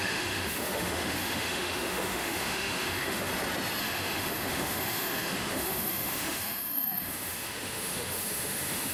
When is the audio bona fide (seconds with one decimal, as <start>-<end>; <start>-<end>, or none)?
3.3-3.8